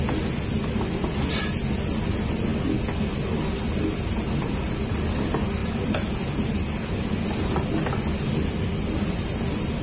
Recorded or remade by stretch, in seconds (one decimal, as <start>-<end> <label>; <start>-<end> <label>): 0.0-9.8 recorded